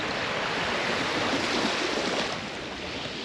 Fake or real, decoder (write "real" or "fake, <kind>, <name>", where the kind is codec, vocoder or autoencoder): real